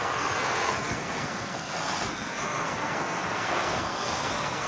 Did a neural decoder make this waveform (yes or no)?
yes